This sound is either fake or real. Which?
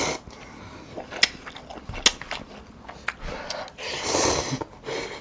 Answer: real